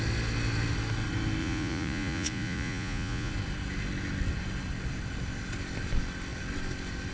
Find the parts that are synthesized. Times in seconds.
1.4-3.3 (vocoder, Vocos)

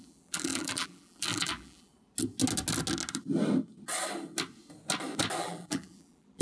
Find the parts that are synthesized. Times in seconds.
0.0-1.9 (vocoder, BigVGAN v2); 5.4-6.4

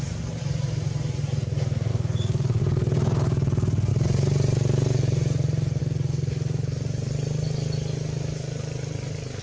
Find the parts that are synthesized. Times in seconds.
1.9-2.6 (codec, DAC)

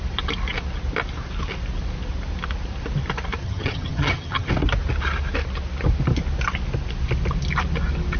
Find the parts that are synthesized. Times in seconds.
3.4-4.5 (vocoder, HiFi-GAN)

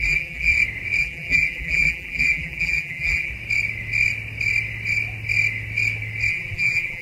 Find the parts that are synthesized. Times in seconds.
0.0-0.5 (vocoder, BigVGAN v2); 1.0-3.3; 6.3-7.0

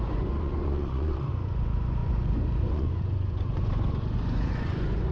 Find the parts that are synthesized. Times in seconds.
0.0-5.1 (vocoder, Vocos)

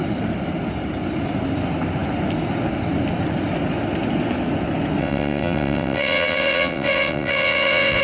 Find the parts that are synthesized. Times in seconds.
5.0-8.0 (vocoder, WaveNeXt)